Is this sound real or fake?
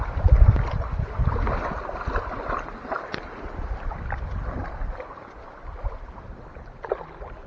real